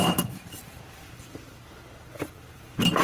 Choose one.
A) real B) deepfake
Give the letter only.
B